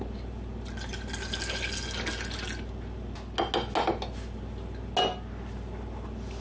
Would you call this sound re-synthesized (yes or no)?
no